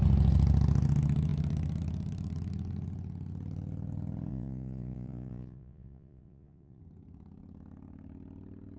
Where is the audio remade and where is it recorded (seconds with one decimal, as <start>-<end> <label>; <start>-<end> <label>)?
0.0-4.3 recorded; 4.3-6.8 remade; 6.8-8.8 recorded